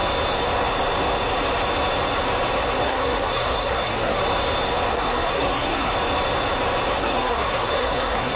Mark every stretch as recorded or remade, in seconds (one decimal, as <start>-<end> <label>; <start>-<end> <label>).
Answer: 0.0-2.8 recorded; 2.8-4.2 remade; 4.2-4.9 recorded; 4.9-5.9 remade; 5.9-7.0 recorded; 7.0-8.4 remade